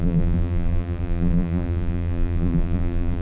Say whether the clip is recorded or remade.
remade